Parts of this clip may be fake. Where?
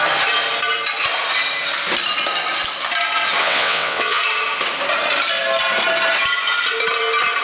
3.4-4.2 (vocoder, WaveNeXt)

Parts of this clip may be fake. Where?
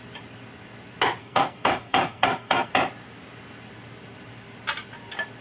1.2-2.7 (codec, SNAC)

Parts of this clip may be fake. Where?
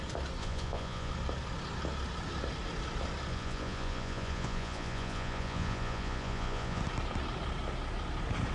0.4-1.1 (vocoder, Vocos); 3.3-6.8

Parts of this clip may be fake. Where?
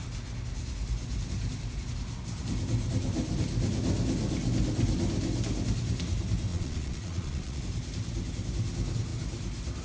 6.5-7.6 (vocoder, Vocos)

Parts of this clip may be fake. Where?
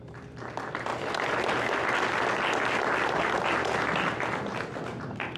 none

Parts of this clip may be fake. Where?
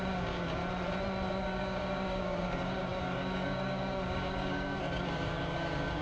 0.0-0.6 (codec, DAC); 1.3-6.0